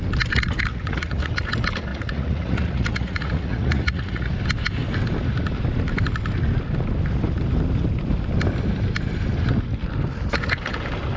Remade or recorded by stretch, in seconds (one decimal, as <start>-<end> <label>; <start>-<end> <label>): 0.0-0.7 recorded; 0.7-1.3 remade; 1.3-1.9 recorded; 1.9-4.3 remade; 4.3-11.2 recorded